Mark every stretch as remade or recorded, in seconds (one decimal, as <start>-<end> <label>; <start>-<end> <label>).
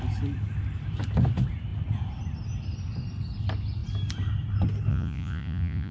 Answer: 0.0-4.9 recorded; 4.9-5.9 remade